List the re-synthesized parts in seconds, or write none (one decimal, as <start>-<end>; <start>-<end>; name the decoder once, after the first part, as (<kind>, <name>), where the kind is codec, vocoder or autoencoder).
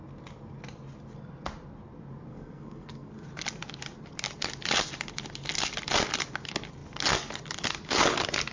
2.3-3.1 (codec, SNAC)